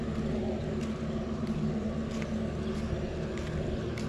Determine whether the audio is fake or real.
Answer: real